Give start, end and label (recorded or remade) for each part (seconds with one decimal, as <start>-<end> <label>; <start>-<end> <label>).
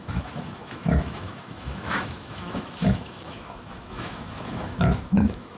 0.0-5.6 remade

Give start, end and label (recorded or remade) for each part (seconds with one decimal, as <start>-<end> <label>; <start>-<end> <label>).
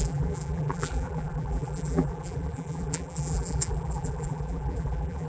0.0-5.3 remade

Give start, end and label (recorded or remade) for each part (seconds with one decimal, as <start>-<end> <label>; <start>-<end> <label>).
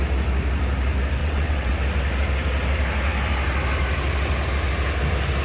0.0-1.2 recorded; 1.2-1.7 remade; 1.7-5.4 recorded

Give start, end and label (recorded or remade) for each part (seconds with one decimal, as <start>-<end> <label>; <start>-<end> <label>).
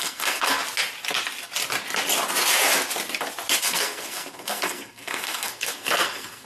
0.0-0.6 remade; 0.6-3.6 recorded; 3.6-6.5 remade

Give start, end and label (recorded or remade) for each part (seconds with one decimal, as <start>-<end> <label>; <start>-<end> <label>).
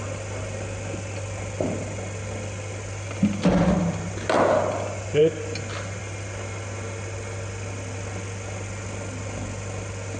0.0-10.2 recorded